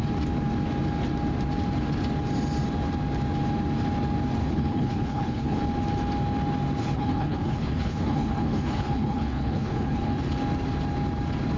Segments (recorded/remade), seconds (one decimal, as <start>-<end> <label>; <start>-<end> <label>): 0.0-4.4 recorded; 4.4-5.6 remade; 5.6-6.8 recorded; 6.8-10.3 remade; 10.3-11.6 recorded